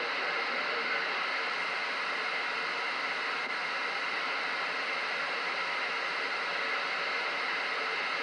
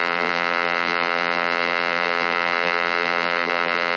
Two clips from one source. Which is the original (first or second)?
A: first